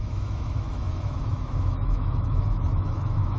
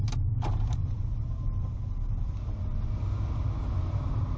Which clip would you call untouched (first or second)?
second